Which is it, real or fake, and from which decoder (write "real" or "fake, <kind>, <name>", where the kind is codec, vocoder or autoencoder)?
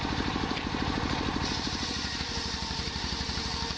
fake, vocoder, BigVGAN v2